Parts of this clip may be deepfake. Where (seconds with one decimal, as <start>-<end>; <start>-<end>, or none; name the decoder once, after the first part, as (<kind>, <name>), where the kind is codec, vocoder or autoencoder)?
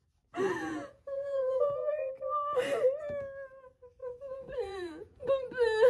0.6-2.1 (vocoder, Vocos); 4.0-5.3